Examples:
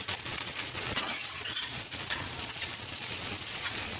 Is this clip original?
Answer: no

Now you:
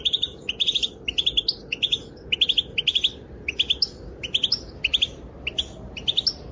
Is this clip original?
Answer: yes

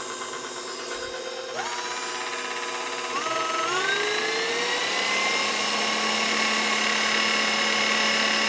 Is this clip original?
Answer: yes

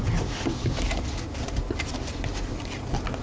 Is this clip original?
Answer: yes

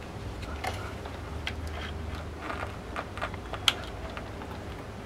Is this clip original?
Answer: yes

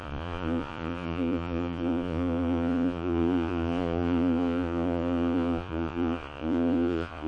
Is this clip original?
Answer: no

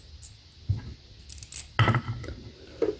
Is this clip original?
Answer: yes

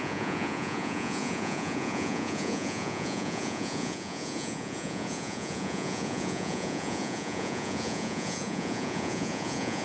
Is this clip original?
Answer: no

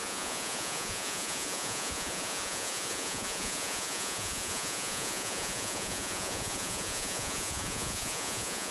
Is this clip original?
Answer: no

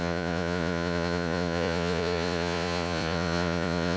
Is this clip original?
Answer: no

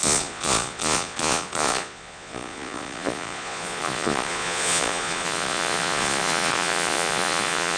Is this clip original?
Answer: no